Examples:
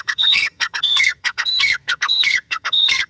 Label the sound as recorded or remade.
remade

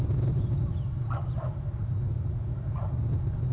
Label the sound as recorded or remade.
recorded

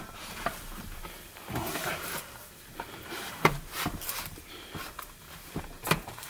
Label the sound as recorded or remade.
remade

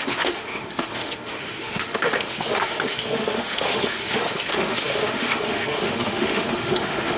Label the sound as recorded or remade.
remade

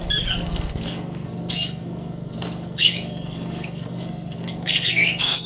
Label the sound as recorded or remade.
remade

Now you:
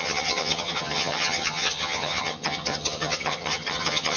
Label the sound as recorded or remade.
remade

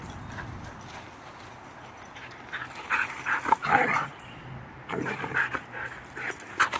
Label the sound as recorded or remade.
recorded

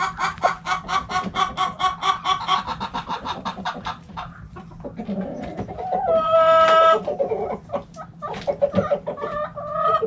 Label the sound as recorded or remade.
recorded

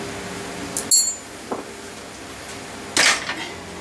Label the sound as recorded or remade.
recorded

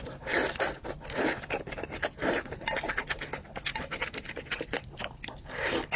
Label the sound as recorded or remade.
recorded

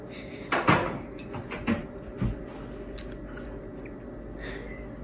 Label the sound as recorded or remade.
recorded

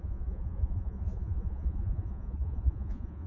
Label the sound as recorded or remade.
remade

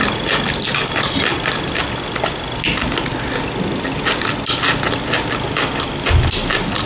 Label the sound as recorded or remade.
recorded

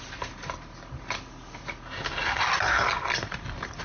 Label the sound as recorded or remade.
recorded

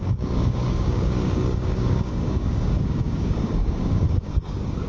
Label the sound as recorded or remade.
remade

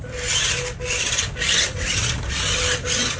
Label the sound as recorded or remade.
recorded